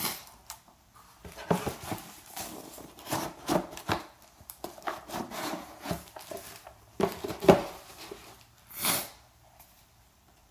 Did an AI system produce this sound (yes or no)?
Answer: yes